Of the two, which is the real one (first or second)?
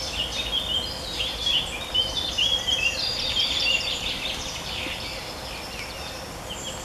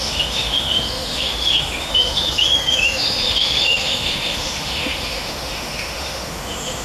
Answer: first